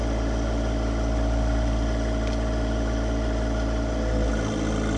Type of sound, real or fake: real